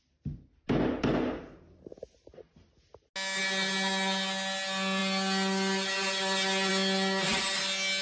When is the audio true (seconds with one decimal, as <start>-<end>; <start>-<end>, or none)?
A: 0.0-8.0